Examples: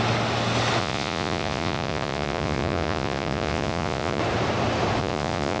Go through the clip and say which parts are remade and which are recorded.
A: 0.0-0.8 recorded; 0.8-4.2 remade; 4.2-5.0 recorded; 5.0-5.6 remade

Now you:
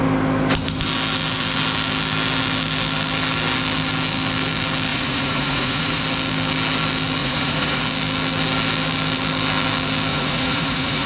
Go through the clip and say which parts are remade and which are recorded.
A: 0.0-4.9 recorded; 4.9-6.0 remade; 6.0-7.2 recorded; 7.2-7.8 remade; 7.8-10.1 recorded; 10.1-11.1 remade

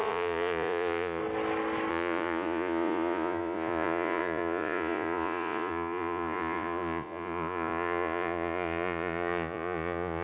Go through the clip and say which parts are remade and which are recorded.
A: 0.0-1.2 remade; 1.2-1.9 recorded; 1.9-10.2 remade

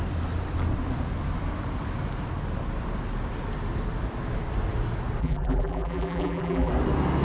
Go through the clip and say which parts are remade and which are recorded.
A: 0.0-5.2 recorded; 5.2-6.7 remade; 6.7-7.2 recorded

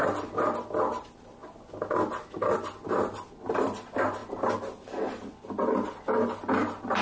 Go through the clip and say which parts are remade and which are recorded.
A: 0.0-7.0 recorded